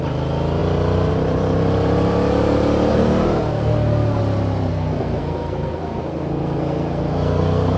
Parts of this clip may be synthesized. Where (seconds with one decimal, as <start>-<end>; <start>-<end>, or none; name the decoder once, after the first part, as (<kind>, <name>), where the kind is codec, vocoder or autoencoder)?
2.9-4.2 (codec, SNAC); 4.7-7.8